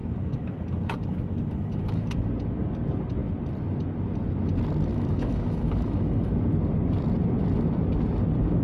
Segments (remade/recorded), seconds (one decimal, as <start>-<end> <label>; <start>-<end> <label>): 0.0-2.3 remade; 2.3-4.9 recorded; 4.9-6.3 remade; 6.3-8.6 recorded